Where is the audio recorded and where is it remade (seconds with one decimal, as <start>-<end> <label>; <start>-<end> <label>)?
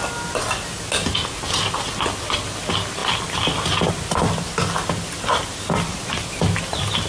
0.0-7.1 recorded